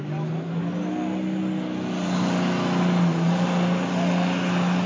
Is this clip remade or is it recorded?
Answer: recorded